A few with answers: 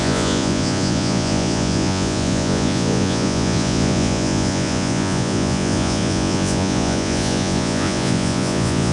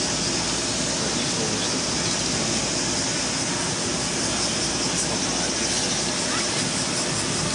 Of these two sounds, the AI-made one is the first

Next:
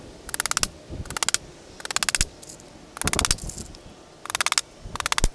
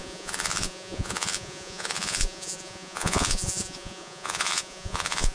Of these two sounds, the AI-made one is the second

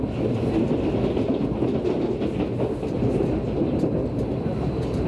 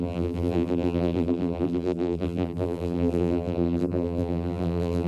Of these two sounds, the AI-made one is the second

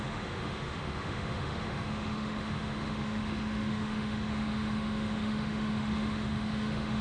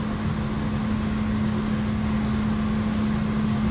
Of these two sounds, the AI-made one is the first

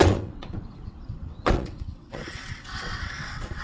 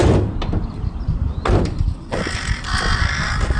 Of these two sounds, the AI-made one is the first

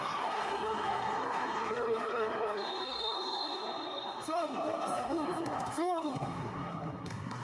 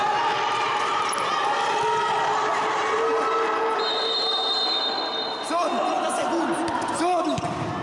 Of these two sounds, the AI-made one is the first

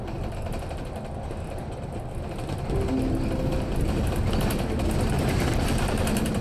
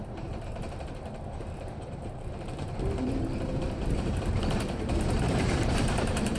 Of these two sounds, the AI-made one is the second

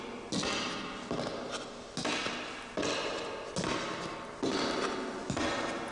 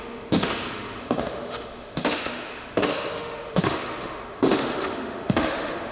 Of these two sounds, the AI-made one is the second